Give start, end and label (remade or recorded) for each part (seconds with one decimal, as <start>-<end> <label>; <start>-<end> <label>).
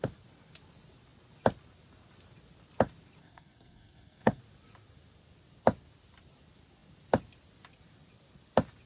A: 0.0-3.2 recorded; 3.2-4.4 remade; 4.4-8.9 recorded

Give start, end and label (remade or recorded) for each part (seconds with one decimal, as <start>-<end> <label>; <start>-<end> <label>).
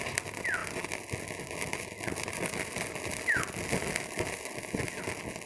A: 0.0-5.5 recorded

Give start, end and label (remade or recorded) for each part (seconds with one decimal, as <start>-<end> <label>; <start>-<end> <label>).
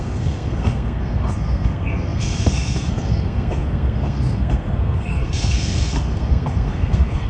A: 0.0-7.3 remade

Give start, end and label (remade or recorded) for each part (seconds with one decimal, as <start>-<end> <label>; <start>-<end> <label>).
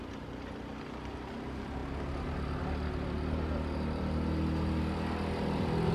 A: 0.0-5.9 recorded